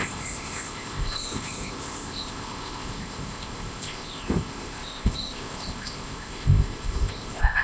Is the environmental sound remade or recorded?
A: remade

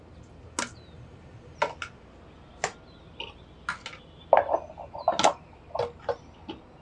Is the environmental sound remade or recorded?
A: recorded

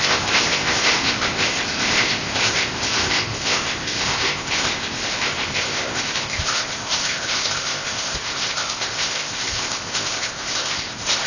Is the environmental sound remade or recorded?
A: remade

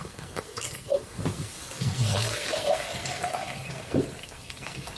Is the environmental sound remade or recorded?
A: remade